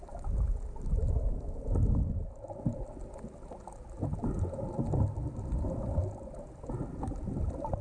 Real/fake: real